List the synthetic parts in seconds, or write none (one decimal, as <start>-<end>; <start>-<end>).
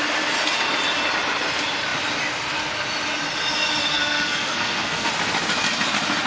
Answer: 3.9-5.1